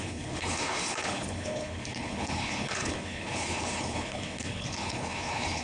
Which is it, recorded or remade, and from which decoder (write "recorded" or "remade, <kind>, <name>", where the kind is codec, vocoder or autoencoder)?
remade, codec, HILCodec